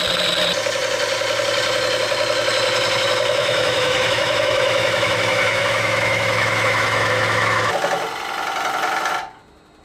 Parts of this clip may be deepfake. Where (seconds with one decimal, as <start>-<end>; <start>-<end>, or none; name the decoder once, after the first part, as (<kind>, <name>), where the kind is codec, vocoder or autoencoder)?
3.4-7.7 (autoencoder, DAC-VAE)